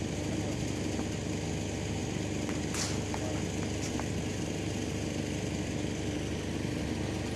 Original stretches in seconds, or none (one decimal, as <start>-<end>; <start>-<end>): 0.0-7.4